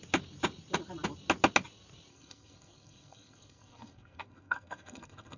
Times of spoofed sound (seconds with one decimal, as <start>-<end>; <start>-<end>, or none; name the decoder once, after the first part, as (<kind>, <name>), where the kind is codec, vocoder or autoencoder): 2.1-5.4 (codec, SNAC)

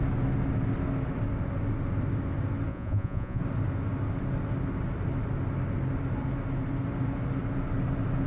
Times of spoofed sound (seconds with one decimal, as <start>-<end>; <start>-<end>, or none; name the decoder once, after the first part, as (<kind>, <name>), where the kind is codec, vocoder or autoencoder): 2.7-3.4 (vocoder, Vocos)

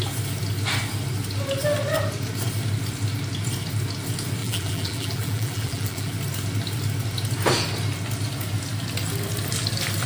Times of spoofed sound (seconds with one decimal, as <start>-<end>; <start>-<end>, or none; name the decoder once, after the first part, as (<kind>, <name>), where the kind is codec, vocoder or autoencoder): 4.4-6.1 (vocoder, BigVGAN v2)

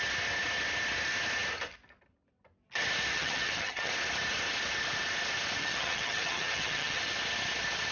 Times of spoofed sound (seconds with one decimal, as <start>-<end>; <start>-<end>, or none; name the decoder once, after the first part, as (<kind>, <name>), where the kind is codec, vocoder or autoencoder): 3.1-3.9 (vocoder, HiFi-GAN); 5.6-7.0